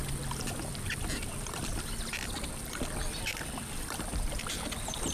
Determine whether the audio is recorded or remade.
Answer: remade